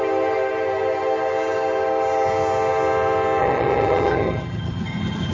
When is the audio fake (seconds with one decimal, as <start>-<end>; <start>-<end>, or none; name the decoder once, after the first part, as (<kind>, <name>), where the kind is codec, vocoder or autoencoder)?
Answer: 3.4-5.3 (vocoder, HiFi-GAN)